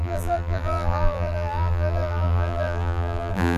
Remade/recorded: remade